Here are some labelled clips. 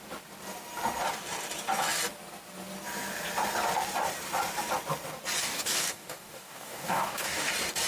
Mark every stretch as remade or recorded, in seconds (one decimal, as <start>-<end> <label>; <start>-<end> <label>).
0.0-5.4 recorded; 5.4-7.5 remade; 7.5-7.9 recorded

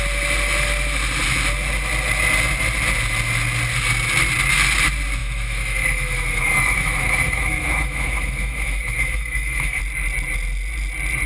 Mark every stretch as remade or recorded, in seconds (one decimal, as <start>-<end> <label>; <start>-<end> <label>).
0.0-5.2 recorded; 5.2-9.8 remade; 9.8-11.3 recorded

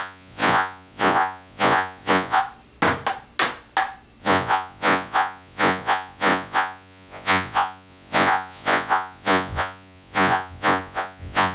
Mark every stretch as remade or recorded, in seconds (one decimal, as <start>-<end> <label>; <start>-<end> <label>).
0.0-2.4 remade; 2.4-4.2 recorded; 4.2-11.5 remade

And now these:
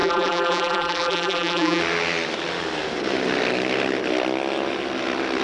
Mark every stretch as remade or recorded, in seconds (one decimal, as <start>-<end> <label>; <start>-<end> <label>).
0.0-1.8 remade; 1.8-5.4 recorded

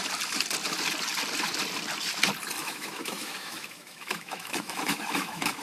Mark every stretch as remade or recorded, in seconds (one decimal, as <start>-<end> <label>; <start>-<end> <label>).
0.0-2.6 recorded; 2.6-5.6 remade